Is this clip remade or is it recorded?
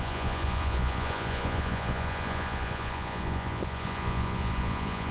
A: remade